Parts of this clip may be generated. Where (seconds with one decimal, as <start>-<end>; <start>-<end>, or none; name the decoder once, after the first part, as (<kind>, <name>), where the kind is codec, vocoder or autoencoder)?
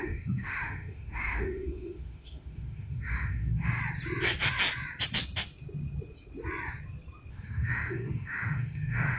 0.0-3.8 (autoencoder, DAC-VAE); 7.3-9.2